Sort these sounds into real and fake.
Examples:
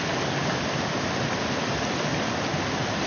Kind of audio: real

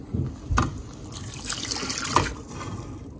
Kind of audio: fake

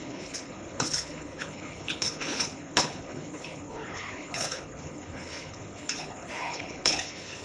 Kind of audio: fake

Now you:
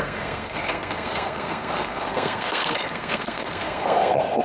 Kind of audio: fake